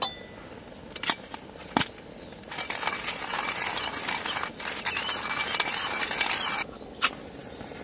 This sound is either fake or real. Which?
real